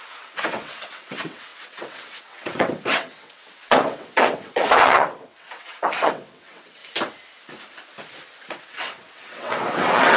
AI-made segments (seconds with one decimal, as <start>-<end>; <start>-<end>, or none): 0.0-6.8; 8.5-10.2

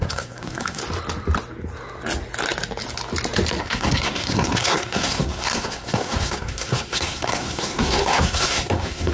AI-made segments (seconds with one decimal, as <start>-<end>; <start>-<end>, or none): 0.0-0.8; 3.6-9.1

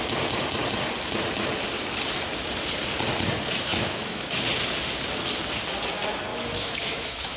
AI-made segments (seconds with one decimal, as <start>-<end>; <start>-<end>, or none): 3.7-4.4; 6.3-7.4

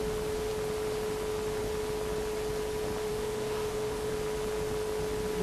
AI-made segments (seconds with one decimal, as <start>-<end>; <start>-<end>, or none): 3.1-4.1

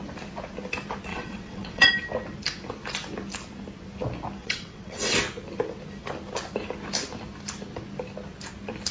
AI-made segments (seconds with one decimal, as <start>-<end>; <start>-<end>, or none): 1.1-1.9; 4.4-5.2

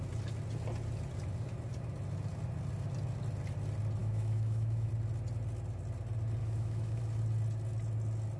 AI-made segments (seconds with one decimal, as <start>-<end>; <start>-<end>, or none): 4.0-4.9; 6.4-7.0

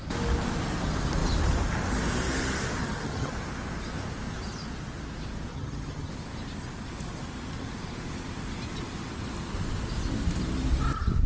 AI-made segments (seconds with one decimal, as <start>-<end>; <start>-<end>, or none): 2.8-3.3; 5.5-6.1

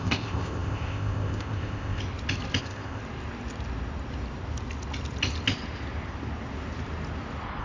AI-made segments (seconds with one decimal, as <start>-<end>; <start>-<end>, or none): 0.0-2.0; 2.6-3.0